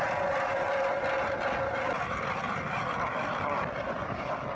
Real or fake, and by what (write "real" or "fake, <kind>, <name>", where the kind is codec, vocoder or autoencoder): real